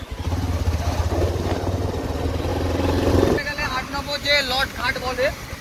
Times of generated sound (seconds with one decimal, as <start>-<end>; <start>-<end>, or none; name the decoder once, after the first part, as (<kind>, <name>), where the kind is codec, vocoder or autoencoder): none